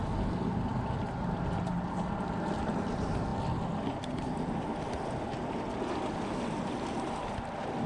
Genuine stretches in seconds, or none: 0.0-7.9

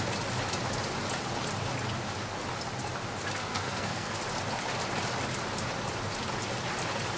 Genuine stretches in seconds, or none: 0.0-3.4; 4.2-7.2

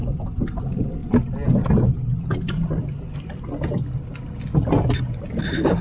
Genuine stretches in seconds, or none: 0.0-5.8